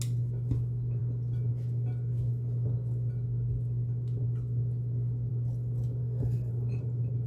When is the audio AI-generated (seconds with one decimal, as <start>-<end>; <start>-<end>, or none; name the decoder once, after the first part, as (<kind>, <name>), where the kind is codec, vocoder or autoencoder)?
6.0-6.5 (codec, SNAC)